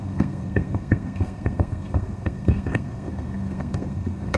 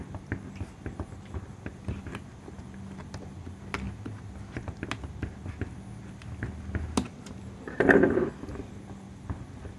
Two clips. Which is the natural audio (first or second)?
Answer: second